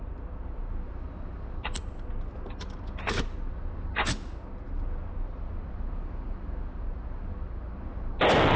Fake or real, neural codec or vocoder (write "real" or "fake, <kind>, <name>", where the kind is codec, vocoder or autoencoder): real